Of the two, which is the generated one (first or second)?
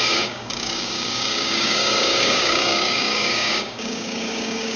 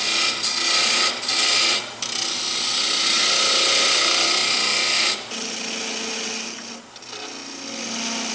first